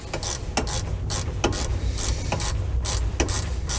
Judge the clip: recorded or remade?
recorded